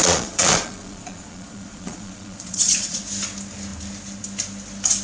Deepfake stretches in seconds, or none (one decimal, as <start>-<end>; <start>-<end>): 0.0-3.0